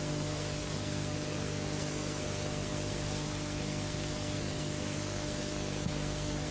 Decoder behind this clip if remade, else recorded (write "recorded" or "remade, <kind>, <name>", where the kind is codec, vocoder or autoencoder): remade, codec, SNAC